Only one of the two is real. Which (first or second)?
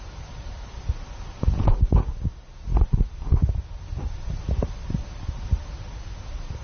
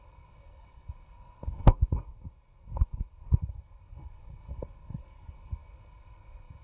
first